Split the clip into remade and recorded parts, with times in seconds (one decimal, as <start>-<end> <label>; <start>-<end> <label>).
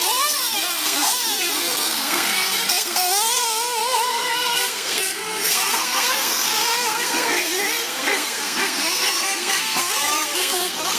0.0-11.0 remade